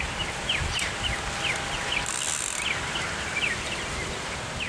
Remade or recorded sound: recorded